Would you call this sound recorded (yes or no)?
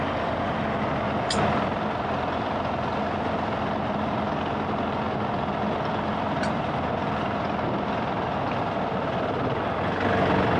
yes